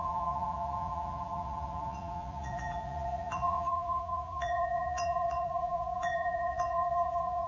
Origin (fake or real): fake